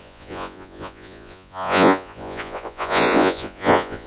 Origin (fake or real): fake